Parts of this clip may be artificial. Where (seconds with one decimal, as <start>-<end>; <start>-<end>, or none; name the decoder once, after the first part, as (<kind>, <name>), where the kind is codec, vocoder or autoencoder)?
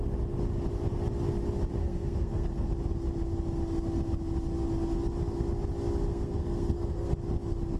1.8-2.7 (codec, SNAC); 6.1-7.1